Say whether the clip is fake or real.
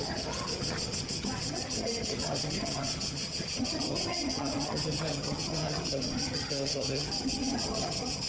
fake